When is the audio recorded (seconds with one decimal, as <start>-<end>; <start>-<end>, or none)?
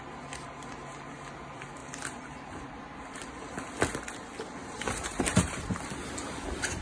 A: 0.0-1.8; 3.5-4.6; 5.8-6.8